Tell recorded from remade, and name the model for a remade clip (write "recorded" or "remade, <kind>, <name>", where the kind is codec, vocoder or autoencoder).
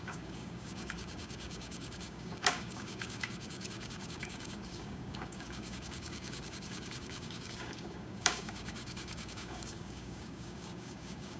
remade, codec, DAC